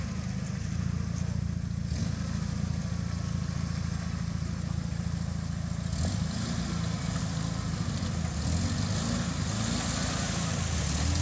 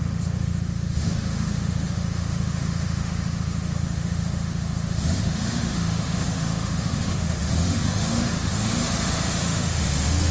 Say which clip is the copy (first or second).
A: second